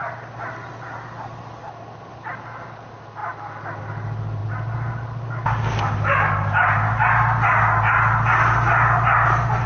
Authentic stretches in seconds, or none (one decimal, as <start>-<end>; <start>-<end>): 0.0-9.7